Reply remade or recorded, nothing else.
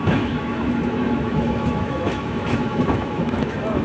remade